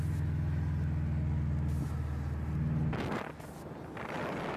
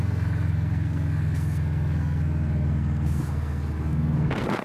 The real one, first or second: first